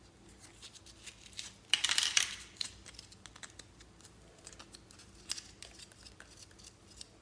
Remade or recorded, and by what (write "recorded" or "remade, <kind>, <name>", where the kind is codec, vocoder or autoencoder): recorded